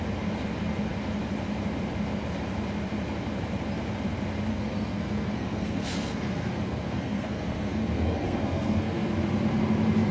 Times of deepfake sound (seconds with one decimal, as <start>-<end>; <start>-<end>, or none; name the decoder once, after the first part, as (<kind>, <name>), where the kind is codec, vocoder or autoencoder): 4.5-9.1 (codec, SNAC)